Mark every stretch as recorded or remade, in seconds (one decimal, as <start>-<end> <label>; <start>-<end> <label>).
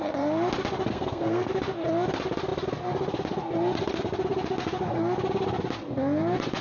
0.0-0.9 recorded; 0.9-1.5 remade; 1.5-6.6 recorded